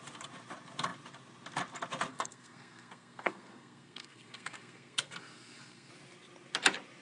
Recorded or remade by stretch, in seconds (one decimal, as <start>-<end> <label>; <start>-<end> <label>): 0.0-2.1 recorded; 2.1-5.9 remade; 5.9-7.0 recorded

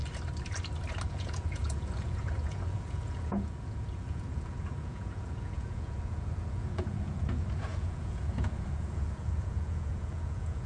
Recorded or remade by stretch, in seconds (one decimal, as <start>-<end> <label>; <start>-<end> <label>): 0.0-1.1 recorded; 1.1-10.7 remade

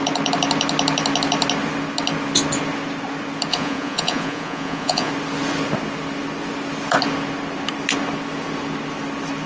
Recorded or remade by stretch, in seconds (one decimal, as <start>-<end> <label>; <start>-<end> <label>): 0.0-3.5 recorded; 3.5-5.1 remade; 5.1-9.5 recorded